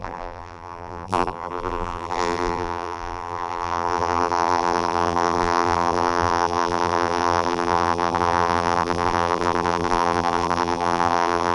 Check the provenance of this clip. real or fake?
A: fake